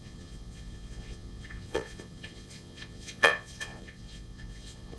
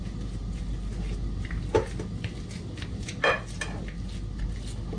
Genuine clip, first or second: second